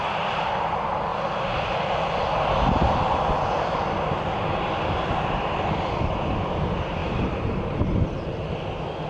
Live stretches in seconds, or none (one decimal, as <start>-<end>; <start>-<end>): 0.0-7.0; 7.8-9.1